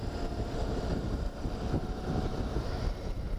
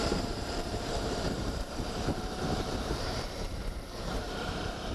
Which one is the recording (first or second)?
first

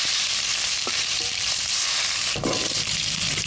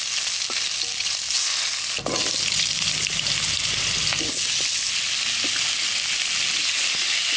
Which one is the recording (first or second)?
second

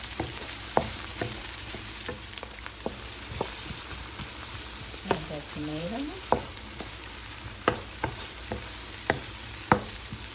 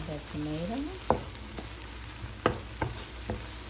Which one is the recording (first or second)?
second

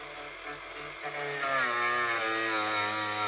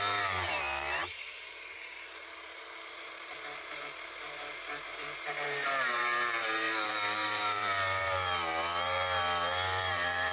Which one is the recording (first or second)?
first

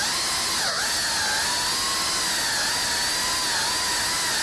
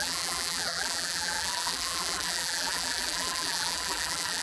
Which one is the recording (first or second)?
first